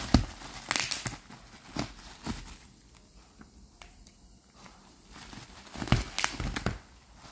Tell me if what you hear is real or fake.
real